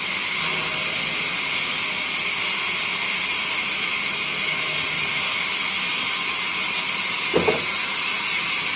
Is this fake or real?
real